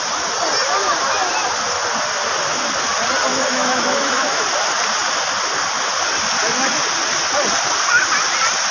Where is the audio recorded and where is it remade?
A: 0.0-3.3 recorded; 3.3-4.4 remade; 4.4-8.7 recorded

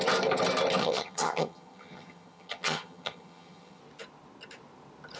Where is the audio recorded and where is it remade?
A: 0.0-0.8 recorded; 0.8-3.8 remade; 3.8-5.2 recorded